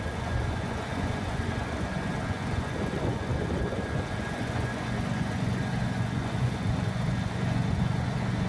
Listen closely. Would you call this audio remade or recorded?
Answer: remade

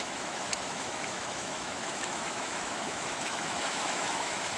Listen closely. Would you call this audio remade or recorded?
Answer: remade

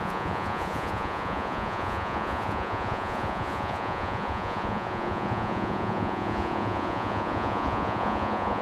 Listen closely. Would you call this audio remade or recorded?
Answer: remade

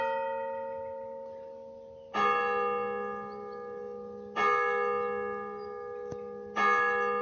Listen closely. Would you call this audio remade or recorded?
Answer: recorded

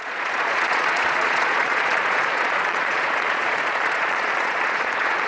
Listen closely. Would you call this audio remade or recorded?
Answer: remade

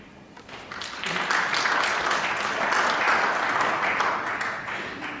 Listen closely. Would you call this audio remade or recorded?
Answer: recorded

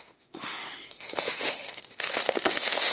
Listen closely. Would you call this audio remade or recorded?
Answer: remade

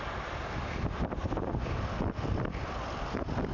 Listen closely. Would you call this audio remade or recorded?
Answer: recorded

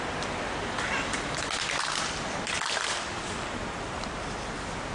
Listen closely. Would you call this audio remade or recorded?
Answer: recorded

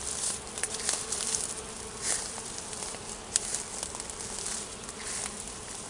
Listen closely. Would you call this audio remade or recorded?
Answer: recorded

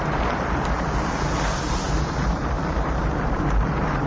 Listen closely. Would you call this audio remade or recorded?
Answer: remade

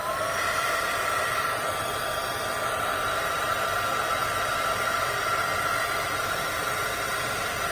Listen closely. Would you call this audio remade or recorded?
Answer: remade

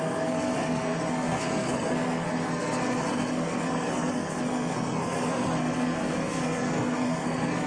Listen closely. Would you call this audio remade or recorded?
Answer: remade